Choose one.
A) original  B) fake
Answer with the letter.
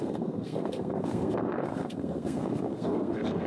B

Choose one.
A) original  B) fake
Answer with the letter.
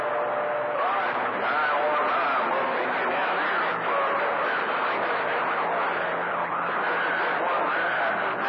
A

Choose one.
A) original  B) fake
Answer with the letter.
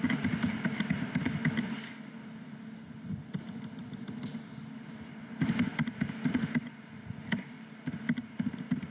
A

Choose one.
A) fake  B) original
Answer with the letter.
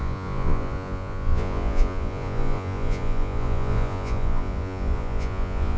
A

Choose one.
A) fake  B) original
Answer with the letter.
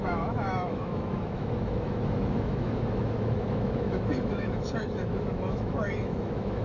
A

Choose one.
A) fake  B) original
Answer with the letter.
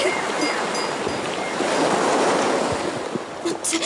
B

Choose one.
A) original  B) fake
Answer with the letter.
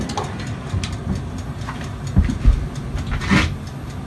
A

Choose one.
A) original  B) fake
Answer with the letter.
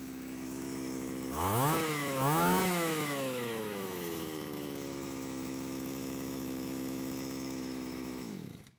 B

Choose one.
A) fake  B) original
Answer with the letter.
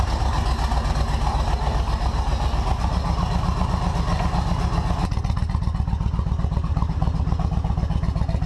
B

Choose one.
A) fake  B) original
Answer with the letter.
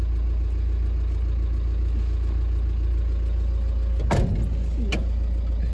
B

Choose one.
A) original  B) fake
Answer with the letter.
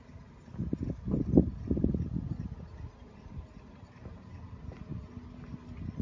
A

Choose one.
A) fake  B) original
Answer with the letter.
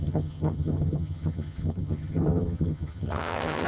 A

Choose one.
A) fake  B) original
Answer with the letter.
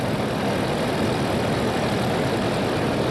B